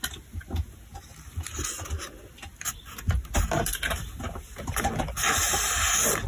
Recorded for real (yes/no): yes